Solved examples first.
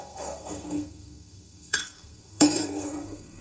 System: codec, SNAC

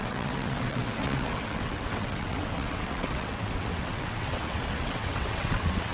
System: vocoder, WaveNeXt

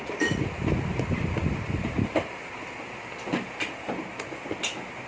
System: none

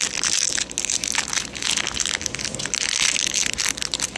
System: none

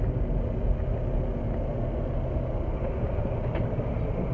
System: none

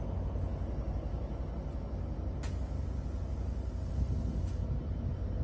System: none